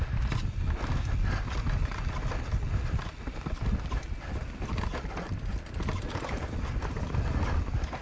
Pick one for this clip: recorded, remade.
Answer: recorded